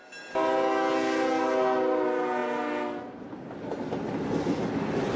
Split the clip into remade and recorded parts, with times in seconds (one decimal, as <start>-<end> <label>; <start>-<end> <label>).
0.0-5.2 recorded